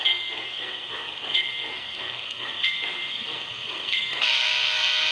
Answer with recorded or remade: remade